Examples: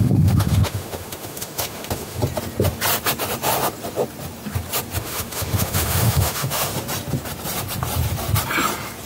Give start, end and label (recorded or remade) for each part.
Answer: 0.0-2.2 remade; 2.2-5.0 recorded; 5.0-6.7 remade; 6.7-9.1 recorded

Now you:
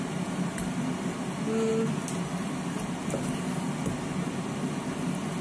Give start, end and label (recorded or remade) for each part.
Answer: 0.0-5.4 recorded

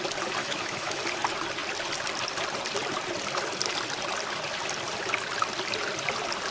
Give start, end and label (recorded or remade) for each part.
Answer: 0.0-0.4 recorded; 0.4-1.0 remade; 1.0-6.5 recorded

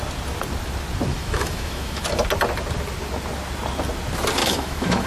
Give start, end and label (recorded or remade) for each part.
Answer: 0.0-1.1 recorded; 1.1-2.0 remade; 2.0-4.4 recorded; 4.4-5.1 remade

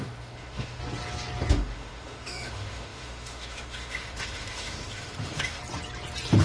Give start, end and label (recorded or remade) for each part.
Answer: 0.0-0.8 remade; 0.8-1.5 recorded; 1.5-5.6 remade; 5.6-6.4 recorded